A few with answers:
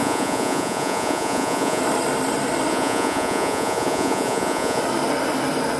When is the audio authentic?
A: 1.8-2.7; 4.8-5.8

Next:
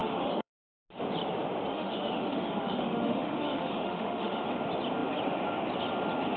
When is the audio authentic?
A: 0.7-1.7; 4.4-6.4

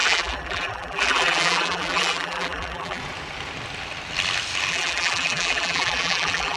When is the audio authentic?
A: 3.0-4.7

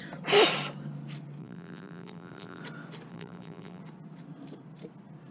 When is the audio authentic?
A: 0.0-1.4; 2.6-3.1; 3.8-5.3

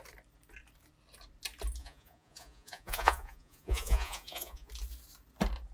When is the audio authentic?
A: 0.0-1.8; 4.7-5.7

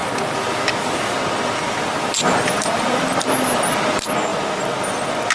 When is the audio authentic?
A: 0.0-5.3

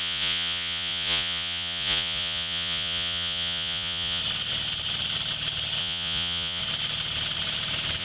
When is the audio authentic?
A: 4.2-5.8; 6.6-8.0

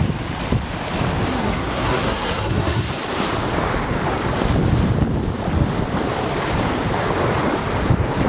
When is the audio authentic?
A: 0.0-1.3; 2.9-8.3